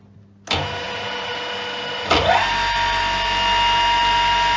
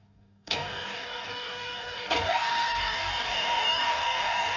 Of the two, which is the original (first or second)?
first